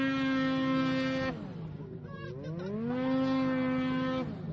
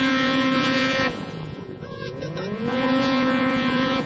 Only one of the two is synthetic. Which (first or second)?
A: second